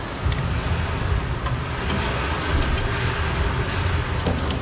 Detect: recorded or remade recorded